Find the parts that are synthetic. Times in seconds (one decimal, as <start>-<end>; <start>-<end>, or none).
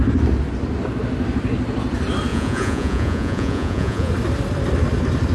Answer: 2.3-4.1